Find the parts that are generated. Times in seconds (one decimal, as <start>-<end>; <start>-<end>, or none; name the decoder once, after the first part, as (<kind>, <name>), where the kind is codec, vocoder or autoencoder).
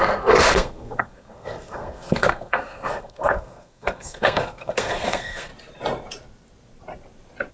0.0-5.5 (codec, SNAC)